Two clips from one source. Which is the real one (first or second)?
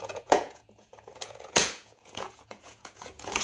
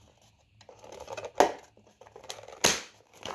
second